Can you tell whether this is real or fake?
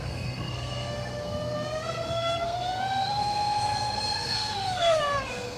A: fake